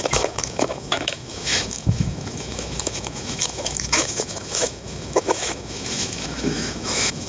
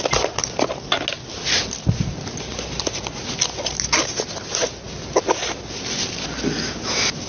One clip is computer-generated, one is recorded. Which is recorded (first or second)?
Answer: second